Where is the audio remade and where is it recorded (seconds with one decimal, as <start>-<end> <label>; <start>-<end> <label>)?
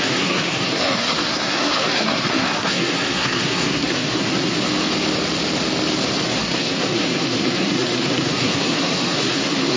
0.0-4.3 remade; 4.3-6.3 recorded; 6.3-9.8 remade